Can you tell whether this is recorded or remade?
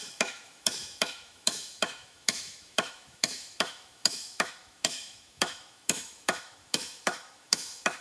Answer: remade